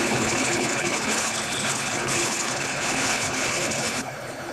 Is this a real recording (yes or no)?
no